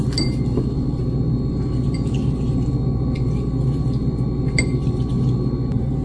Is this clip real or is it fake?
real